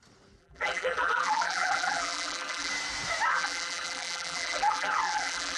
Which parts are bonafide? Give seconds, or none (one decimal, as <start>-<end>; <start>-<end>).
0.0-0.4; 2.7-3.3